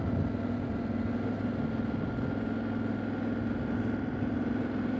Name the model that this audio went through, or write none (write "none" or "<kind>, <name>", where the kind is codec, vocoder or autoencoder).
none